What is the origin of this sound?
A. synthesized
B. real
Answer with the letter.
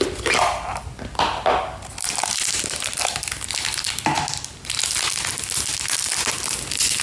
B